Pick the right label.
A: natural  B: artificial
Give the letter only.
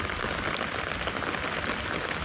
A